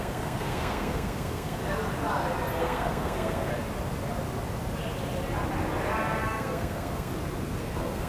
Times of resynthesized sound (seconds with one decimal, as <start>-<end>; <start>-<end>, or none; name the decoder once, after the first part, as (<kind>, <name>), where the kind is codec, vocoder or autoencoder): 0.0-1.6 (codec, SNAC); 2.6-3.5; 6.2-7.1; 7.6-8.1

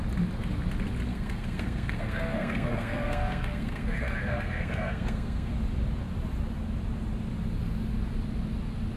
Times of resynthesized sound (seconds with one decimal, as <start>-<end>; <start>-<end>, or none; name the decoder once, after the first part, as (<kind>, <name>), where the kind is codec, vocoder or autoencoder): 1.1-5.5 (codec, SNAC)

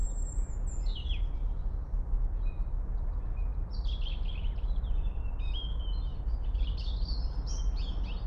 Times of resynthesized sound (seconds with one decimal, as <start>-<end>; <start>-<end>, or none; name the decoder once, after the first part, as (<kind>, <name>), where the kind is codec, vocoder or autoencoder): none

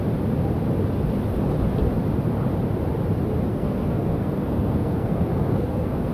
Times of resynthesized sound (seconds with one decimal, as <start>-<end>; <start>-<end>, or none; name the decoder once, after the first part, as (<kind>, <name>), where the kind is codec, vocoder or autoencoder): 3.5-6.1 (codec, SNAC)

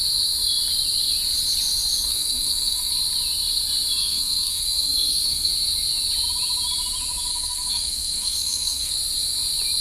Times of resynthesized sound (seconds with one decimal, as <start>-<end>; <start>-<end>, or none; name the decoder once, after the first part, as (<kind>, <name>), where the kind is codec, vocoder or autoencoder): 2.1-2.9 (codec, SNAC); 4.0-5.5; 7.3-8.9